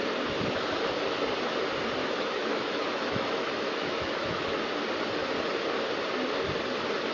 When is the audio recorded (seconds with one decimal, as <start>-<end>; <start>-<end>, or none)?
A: 0.0-2.0; 4.6-7.1